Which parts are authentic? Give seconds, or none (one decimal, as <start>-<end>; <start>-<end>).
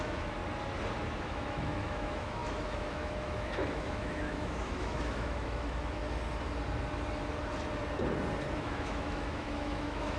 0.4-1.2; 6.0-8.6